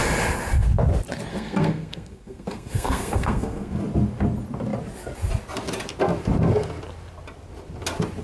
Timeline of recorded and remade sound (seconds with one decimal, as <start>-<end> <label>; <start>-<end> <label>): 0.0-1.3 recorded; 1.3-3.8 remade; 3.8-8.2 recorded